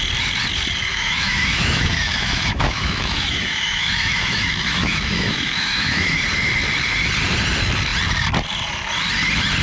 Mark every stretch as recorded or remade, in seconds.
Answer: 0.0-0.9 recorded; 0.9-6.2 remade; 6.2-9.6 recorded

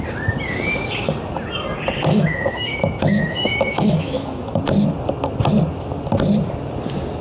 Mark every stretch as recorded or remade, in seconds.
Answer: 0.0-2.1 recorded; 2.1-4.6 remade; 4.6-7.2 recorded

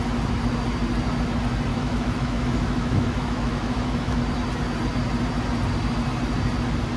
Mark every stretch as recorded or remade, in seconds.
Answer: 0.0-1.7 recorded; 1.7-4.2 remade; 4.2-7.0 recorded

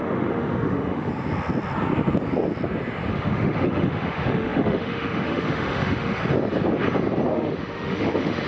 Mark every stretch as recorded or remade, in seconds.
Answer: 0.0-1.1 remade; 1.1-3.1 recorded; 3.1-6.2 remade; 6.2-7.3 recorded; 7.3-8.5 remade

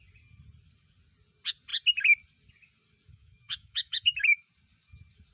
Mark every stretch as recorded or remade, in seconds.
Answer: 0.0-3.1 recorded; 3.1-4.5 remade; 4.5-5.3 recorded